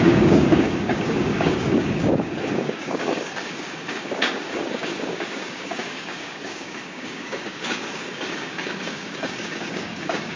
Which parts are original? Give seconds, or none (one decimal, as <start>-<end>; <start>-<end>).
none